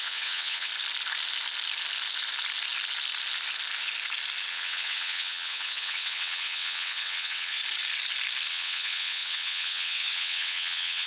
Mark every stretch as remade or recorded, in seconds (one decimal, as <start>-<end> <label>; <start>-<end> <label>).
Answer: 0.0-0.7 remade; 0.7-4.5 recorded; 4.5-7.6 remade; 7.6-8.5 recorded; 8.5-11.1 remade